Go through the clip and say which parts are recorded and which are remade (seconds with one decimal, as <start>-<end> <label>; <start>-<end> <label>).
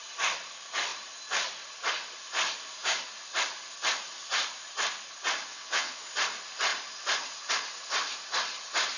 0.0-5.5 recorded; 5.5-6.1 remade; 6.1-9.0 recorded